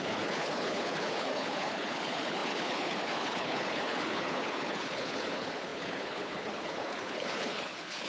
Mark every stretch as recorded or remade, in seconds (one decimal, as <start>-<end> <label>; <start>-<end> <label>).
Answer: 0.0-8.1 remade